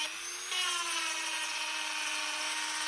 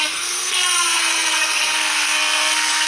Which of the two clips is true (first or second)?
first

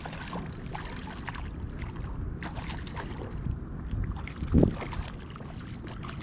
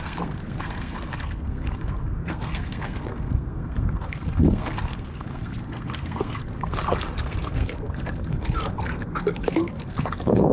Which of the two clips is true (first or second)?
first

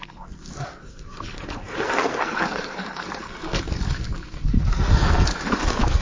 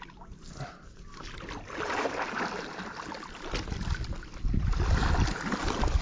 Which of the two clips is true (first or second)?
second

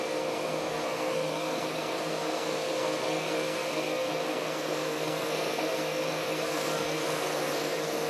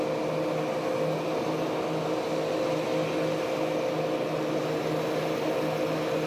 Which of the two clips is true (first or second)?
second